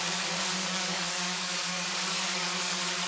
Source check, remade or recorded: remade